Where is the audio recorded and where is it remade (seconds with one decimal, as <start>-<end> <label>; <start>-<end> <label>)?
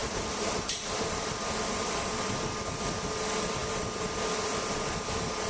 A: 0.0-1.3 remade; 1.3-5.5 recorded